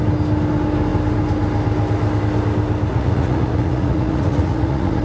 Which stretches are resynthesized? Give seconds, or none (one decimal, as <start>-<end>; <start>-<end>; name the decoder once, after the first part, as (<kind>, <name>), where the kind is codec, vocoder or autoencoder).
2.9-5.0 (vocoder, Vocos)